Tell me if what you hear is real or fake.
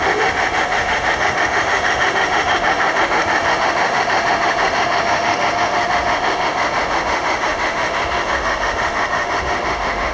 fake